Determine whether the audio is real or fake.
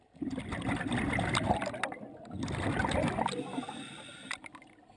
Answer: real